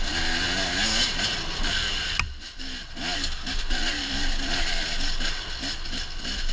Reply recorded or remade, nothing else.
recorded